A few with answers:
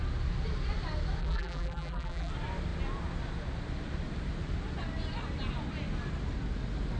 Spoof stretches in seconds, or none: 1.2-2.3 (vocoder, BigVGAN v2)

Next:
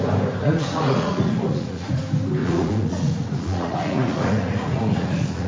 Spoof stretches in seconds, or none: 0.4-2.0 (vocoder, Vocos); 2.4-5.5